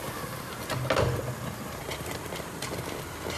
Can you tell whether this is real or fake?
real